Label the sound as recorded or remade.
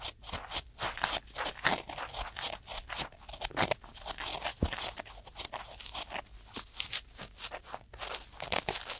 recorded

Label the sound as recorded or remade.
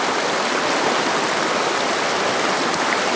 recorded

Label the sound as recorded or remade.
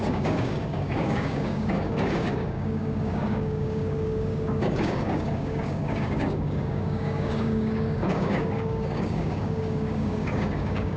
remade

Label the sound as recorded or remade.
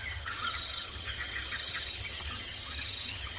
remade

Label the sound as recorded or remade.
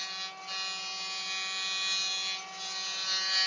recorded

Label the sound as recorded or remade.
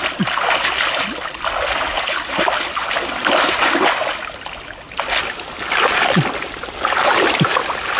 recorded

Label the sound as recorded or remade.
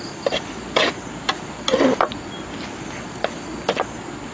recorded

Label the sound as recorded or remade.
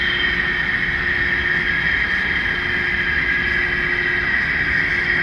recorded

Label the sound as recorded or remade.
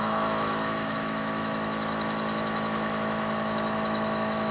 remade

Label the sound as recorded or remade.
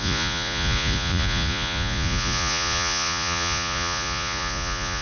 remade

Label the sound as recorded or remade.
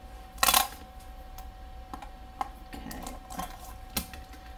recorded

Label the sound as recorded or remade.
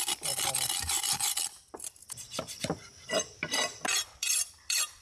remade